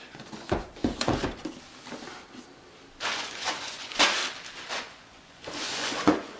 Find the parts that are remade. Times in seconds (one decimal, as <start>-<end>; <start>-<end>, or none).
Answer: 0.0-1.2; 3.0-4.2; 4.7-6.4